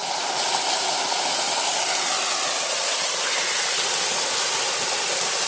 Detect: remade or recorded recorded